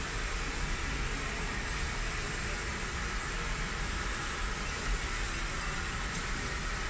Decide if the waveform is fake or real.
real